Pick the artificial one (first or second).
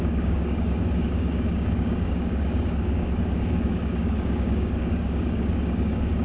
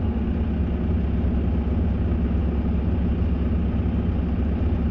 first